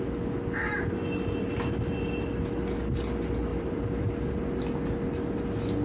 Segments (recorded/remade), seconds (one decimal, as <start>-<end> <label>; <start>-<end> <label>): 0.0-3.5 recorded; 3.5-4.1 remade; 4.1-5.8 recorded